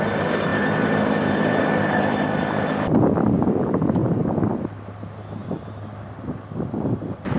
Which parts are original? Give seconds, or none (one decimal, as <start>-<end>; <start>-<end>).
0.0-0.5; 3.0-7.4